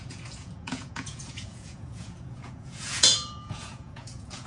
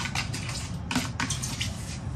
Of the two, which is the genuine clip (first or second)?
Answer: second